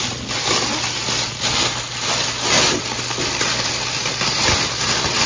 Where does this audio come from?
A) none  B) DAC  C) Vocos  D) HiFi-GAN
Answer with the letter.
A